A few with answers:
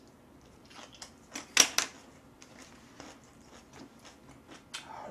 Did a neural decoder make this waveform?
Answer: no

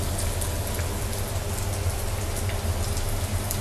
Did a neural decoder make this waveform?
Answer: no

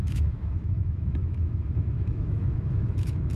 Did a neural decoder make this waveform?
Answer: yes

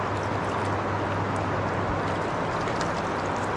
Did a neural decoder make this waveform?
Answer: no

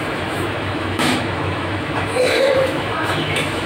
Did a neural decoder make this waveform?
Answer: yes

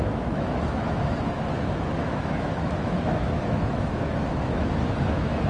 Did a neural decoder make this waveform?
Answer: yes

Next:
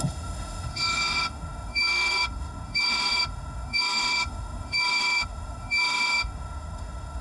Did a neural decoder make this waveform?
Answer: yes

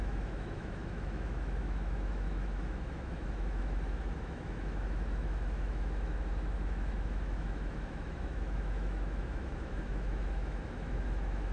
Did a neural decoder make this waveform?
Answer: yes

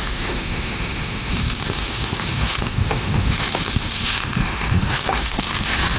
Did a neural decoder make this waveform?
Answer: yes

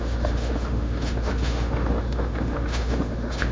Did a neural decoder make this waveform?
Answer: yes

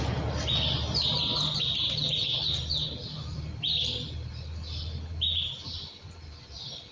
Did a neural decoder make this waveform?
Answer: no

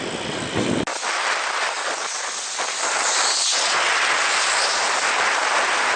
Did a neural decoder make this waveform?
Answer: no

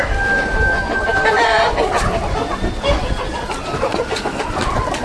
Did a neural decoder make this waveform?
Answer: no